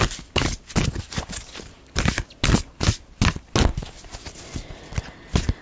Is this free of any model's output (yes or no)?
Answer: yes